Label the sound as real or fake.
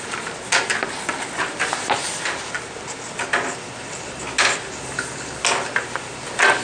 real